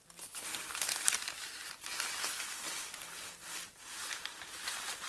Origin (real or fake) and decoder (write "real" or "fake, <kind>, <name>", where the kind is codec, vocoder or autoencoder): real